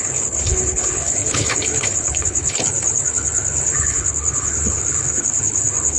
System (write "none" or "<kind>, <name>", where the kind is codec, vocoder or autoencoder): codec, HILCodec